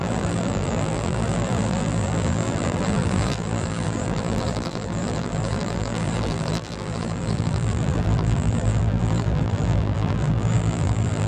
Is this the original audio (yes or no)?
no